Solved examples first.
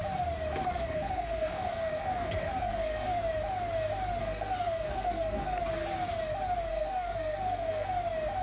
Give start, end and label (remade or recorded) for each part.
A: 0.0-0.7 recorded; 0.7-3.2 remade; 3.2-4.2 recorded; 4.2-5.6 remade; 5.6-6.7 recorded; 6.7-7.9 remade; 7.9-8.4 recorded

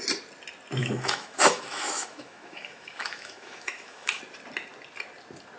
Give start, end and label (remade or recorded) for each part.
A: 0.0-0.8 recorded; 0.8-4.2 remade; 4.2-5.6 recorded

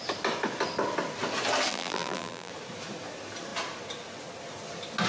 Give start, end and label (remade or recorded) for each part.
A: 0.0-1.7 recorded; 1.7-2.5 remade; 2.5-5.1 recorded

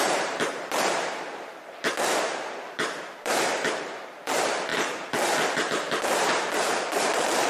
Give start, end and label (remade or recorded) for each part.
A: 0.0-7.5 remade